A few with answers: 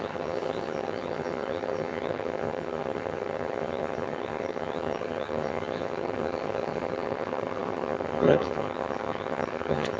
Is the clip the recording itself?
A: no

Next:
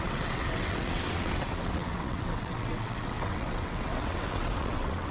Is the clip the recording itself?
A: no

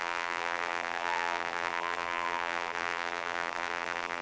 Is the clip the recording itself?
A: no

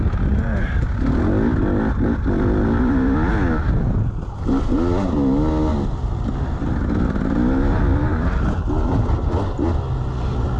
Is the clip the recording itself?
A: yes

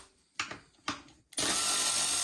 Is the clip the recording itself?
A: yes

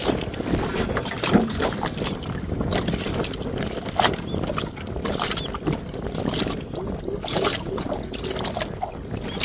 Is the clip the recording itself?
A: yes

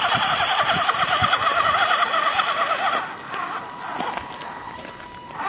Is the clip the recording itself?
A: yes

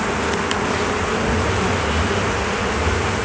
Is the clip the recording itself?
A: yes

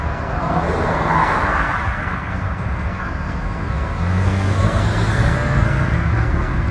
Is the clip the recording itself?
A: no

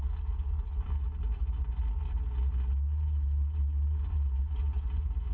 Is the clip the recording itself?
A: yes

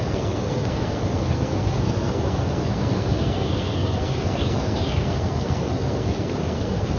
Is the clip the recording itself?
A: no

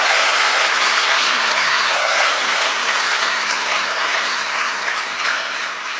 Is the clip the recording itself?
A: no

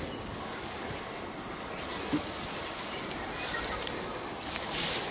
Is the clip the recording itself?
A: yes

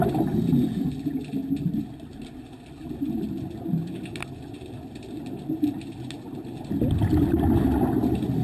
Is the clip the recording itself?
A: yes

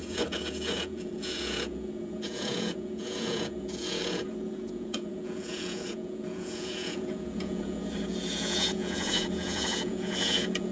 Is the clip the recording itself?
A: no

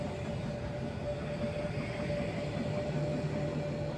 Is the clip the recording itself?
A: yes